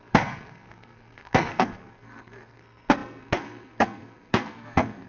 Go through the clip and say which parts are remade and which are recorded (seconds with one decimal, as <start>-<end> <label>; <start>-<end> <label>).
0.0-5.1 remade